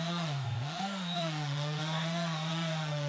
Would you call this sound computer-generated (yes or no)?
yes